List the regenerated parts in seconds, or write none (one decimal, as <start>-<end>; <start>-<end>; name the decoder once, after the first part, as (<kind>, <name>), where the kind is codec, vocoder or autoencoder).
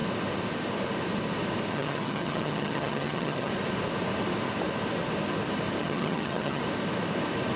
1.7-3.5 (vocoder, HiFi-GAN); 5.8-6.6